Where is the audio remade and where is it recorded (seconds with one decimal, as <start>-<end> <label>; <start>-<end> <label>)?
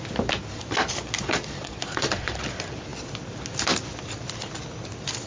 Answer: 0.0-1.2 recorded; 1.2-2.3 remade; 2.3-5.3 recorded